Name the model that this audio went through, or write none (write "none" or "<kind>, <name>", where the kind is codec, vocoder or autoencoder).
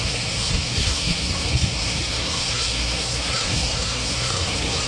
codec, SNAC